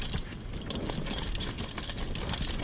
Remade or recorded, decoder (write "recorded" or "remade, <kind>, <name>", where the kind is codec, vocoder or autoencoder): remade, vocoder, BigVGAN v2